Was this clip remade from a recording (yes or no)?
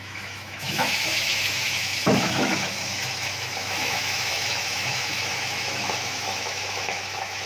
yes